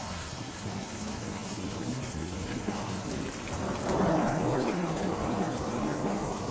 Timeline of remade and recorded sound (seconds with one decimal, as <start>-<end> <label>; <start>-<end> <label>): 0.0-3.1 remade; 3.1-4.1 recorded; 4.1-6.5 remade